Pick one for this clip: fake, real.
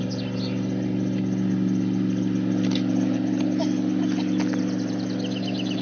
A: real